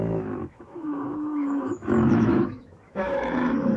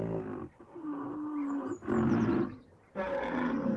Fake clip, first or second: first